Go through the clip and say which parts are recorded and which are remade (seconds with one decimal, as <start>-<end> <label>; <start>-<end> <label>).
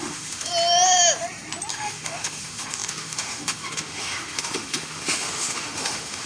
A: 0.0-0.5 remade; 0.5-1.7 recorded; 1.7-6.3 remade